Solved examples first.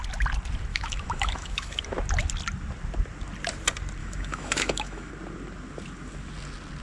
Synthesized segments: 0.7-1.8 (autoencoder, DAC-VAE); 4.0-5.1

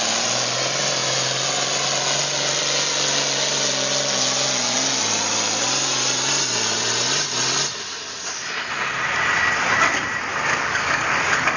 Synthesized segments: 10.3-11.6 (codec, DAC)

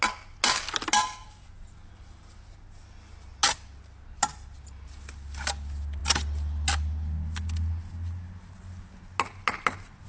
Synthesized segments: none

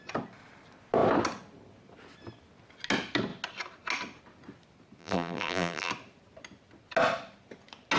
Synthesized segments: 5.0-5.9 (vocoder, BigVGAN v2)

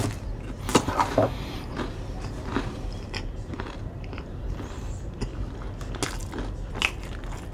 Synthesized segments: 0.7-5.2 (vocoder, BigVGAN v2)

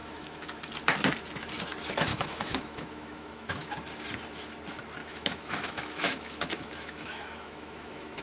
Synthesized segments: 0.0-0.7 (autoencoder, DAC-VAE); 2.1-3.7; 5.0-8.2

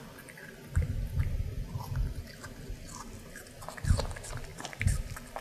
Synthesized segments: none

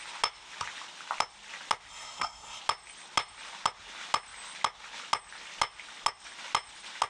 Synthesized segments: 1.9-2.6 (codec, SNAC)